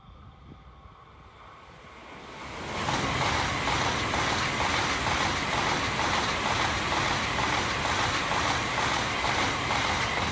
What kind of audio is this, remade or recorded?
recorded